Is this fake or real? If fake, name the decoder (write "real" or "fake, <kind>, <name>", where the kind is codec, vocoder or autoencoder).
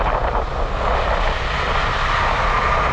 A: real